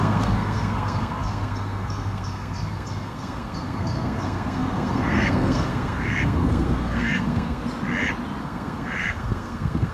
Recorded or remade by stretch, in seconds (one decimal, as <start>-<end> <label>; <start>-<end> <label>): 0.0-7.6 remade; 7.6-8.4 recorded; 8.4-9.9 remade